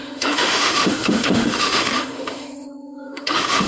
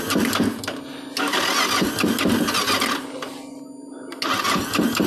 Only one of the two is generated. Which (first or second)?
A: first